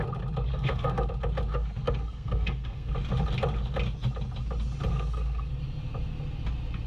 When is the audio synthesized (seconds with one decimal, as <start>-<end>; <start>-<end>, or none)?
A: 0.5-1.1; 1.5-2.9; 4.9-5.5